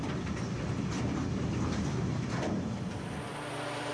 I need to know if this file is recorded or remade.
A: recorded